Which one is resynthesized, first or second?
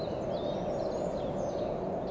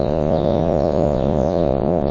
second